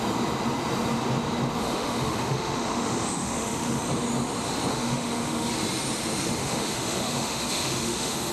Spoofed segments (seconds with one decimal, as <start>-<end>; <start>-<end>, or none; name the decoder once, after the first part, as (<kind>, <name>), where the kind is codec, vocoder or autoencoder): 1.6-3.8 (autoencoder, DAC-VAE); 4.7-5.5; 6.4-8.3